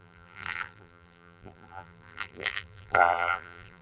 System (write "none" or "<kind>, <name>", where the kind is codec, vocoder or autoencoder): vocoder, BigVGAN v2